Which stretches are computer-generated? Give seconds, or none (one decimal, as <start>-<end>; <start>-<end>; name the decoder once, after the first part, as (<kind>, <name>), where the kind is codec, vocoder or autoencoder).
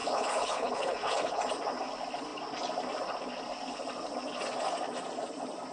0.0-1.4 (codec, HILCodec)